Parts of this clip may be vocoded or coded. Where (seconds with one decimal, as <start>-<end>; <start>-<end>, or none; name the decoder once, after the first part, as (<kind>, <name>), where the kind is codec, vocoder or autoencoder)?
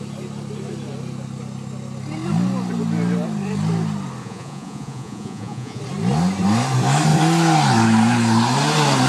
4.2-5.8 (vocoder, Vocos)